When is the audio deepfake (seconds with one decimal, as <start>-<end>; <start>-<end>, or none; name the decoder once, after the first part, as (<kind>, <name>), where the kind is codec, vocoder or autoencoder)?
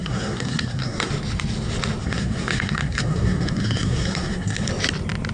0.0-1.1 (codec, SNAC); 2.0-4.7